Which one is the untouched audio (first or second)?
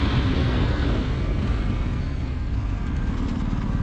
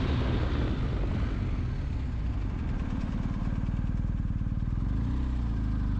second